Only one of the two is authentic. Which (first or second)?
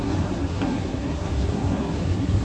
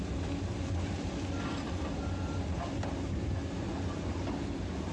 second